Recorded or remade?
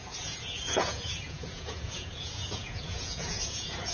remade